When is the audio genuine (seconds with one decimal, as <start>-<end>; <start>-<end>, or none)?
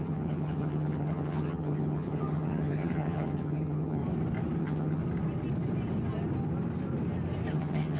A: 4.0-4.6; 5.0-7.5